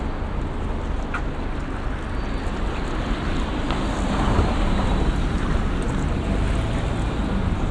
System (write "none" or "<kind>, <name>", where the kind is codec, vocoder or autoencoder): none